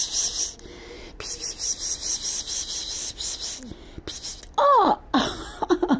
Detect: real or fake real